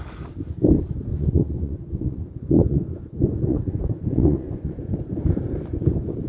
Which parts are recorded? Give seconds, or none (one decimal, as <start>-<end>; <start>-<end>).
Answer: 0.0-1.1; 4.9-6.3